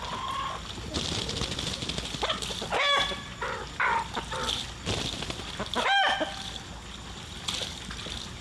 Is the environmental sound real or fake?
real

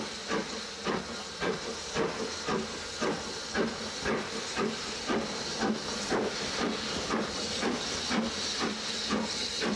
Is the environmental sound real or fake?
real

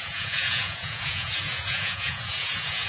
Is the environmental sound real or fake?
fake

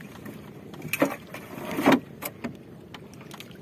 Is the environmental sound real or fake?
real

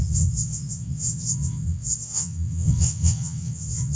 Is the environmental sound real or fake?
fake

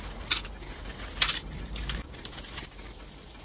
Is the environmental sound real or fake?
real